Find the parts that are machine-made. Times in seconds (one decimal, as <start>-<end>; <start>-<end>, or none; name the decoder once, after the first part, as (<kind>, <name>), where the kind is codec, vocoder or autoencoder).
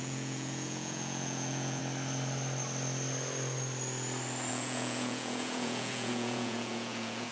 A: 0.0-1.8 (vocoder, Vocos); 4.5-7.3